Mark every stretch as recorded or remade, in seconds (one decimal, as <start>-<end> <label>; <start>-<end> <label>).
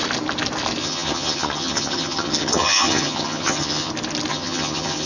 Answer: 0.0-0.8 recorded; 0.8-3.9 remade; 3.9-4.3 recorded; 4.3-5.1 remade